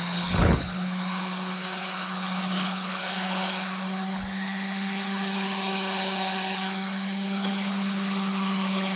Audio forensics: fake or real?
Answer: fake